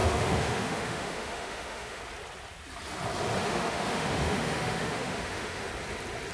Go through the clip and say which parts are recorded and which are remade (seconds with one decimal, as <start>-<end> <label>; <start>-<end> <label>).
0.0-2.0 remade; 2.0-3.4 recorded; 3.4-5.7 remade; 5.7-6.3 recorded